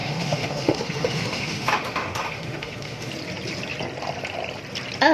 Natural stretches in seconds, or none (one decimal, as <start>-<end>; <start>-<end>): 3.1-5.1